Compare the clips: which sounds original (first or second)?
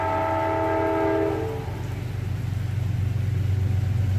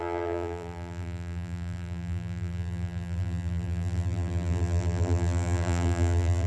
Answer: first